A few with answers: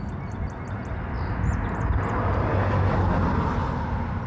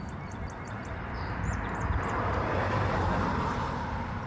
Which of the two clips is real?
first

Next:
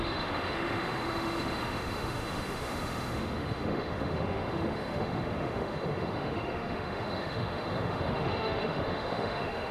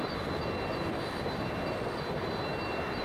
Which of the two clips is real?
second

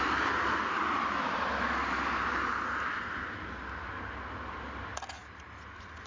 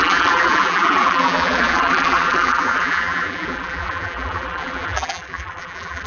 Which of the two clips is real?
first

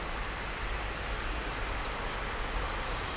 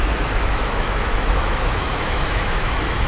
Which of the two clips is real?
first